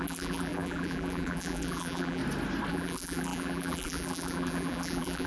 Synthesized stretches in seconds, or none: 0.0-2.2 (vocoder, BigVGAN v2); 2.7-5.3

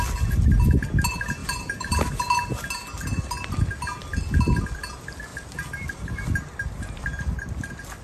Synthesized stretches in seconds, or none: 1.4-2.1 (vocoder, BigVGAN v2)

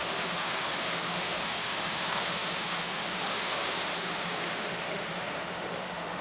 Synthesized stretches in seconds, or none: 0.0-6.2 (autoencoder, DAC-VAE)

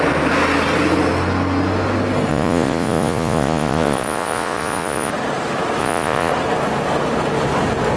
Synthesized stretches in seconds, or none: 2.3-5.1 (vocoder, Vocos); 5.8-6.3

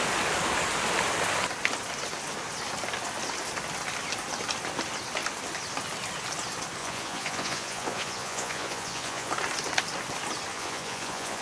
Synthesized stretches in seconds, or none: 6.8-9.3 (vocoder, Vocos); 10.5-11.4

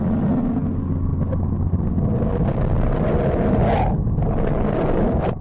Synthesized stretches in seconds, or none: none

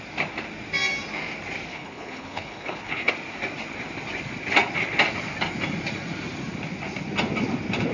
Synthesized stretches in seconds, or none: 1.7-3.1 (codec, HILCodec)

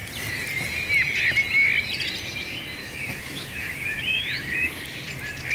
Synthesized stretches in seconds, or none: 2.8-4.8 (autoencoder, DAC-VAE)